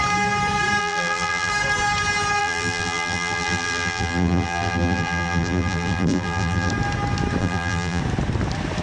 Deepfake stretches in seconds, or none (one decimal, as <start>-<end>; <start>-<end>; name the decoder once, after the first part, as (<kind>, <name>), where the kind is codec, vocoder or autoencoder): 0.8-1.5 (vocoder, BigVGAN v2); 2.4-6.7; 7.4-8.0